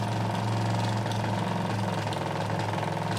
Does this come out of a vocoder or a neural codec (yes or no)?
no